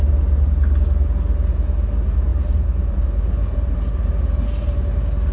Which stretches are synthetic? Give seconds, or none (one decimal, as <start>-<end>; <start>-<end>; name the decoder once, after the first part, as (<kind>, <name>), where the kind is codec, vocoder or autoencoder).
2.3-3.9 (vocoder, BigVGAN v2)